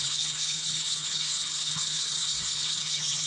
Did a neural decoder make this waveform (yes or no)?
yes